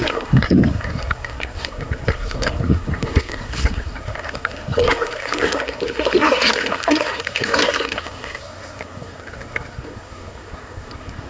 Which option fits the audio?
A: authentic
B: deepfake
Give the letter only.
B